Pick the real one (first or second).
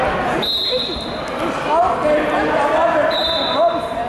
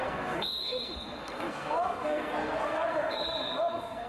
first